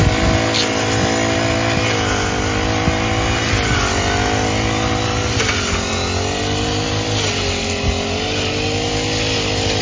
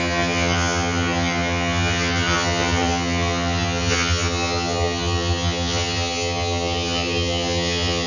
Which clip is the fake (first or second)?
second